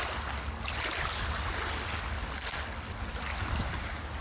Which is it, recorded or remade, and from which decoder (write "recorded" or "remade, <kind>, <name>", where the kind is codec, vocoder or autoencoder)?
recorded